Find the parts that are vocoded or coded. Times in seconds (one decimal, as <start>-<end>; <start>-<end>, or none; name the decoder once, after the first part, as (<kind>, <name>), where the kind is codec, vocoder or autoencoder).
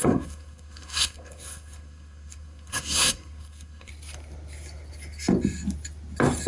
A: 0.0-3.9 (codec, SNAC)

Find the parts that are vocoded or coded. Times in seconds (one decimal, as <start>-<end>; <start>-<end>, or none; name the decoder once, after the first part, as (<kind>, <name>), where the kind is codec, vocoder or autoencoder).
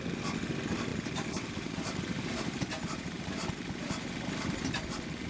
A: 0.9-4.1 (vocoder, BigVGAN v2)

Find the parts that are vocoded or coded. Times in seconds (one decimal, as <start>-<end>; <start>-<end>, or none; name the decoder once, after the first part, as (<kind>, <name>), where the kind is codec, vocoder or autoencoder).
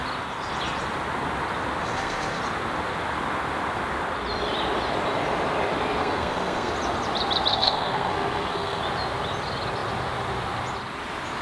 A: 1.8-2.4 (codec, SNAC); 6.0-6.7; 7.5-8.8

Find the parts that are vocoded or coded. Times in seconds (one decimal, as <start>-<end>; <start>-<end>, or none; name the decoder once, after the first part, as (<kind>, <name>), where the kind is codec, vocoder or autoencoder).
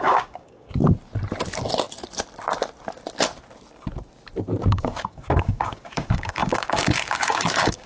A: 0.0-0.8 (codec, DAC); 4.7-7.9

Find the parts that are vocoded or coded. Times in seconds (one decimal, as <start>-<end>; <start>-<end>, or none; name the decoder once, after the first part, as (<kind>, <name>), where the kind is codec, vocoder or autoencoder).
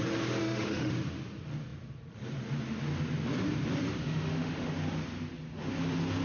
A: 0.4-0.9 (autoencoder, DAC-VAE); 4.0-4.7